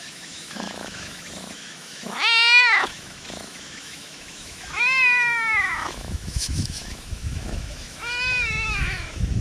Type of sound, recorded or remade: remade